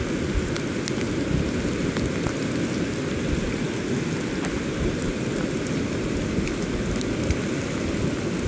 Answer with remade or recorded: recorded